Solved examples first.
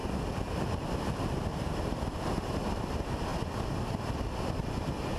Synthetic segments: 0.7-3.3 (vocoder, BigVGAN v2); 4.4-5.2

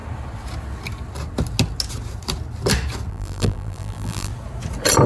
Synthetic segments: 3.1-4.3 (vocoder, BigVGAN v2)

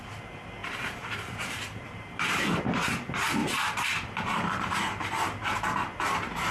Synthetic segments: 0.6-2.6 (vocoder, BigVGAN v2); 3.4-4.7

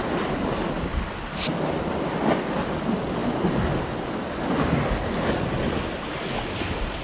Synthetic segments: none

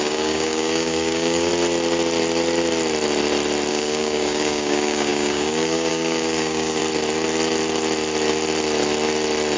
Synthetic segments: 0.0-1.5 (codec, DAC); 3.7-6.8